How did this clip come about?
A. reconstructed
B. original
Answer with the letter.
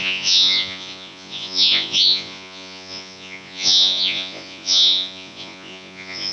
A